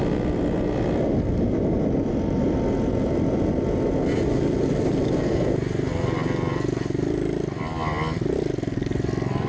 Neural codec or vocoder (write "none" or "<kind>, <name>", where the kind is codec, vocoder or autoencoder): none